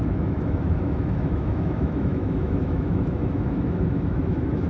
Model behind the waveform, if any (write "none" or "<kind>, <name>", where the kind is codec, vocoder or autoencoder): autoencoder, DAC-VAE